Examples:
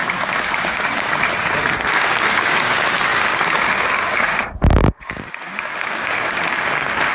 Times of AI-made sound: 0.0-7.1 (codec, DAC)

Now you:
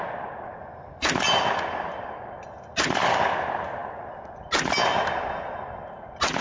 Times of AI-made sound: none